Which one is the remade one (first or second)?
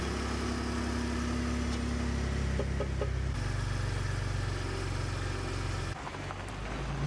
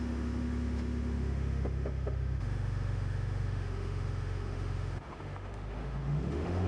second